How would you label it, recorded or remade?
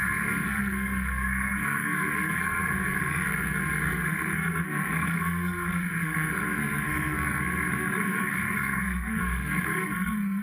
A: remade